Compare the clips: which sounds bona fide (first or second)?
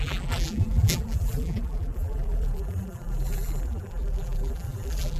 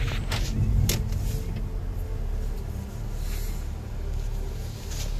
second